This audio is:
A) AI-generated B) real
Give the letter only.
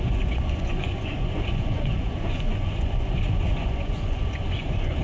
A